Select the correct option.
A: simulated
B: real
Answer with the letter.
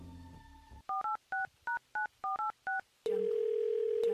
B